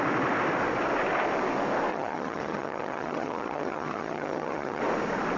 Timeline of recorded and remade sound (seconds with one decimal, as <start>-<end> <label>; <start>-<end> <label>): 0.0-1.9 recorded; 1.9-4.8 remade; 4.8-5.4 recorded